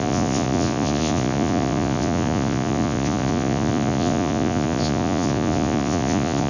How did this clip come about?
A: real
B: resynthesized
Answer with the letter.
B